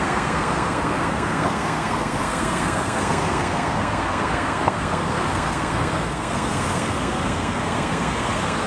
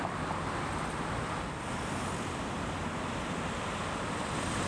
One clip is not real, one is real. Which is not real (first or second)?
first